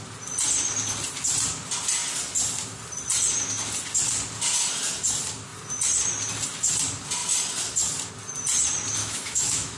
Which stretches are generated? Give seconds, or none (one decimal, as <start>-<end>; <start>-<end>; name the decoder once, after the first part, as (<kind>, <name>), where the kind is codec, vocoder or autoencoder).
9.0-9.8 (autoencoder, DAC-VAE)